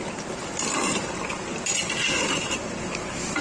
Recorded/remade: remade